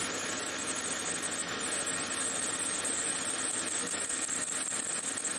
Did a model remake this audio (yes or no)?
no